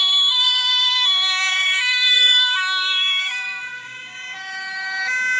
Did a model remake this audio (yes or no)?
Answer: yes